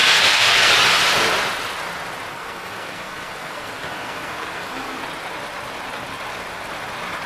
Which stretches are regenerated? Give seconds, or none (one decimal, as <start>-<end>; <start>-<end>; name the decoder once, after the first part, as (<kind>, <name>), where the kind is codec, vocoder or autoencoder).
0.0-0.7 (codec, SNAC); 2.3-5.0